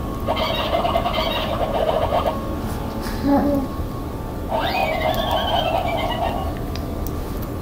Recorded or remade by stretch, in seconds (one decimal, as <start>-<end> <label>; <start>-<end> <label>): 0.0-2.1 recorded; 2.1-4.1 remade; 4.1-4.8 recorded; 4.8-5.5 remade; 5.5-7.6 recorded